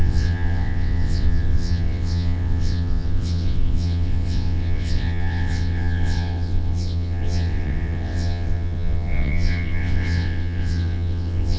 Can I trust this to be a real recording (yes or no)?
no